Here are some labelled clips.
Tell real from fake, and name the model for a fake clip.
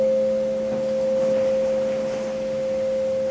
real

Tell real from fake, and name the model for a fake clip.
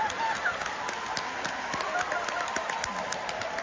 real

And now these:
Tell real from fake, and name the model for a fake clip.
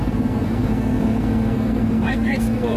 fake, codec, SNAC